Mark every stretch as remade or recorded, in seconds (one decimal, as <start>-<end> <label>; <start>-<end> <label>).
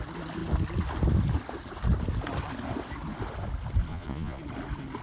0.0-3.9 recorded; 3.9-4.4 remade; 4.4-5.0 recorded